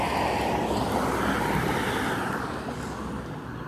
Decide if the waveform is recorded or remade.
recorded